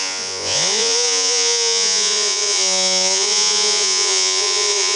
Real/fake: fake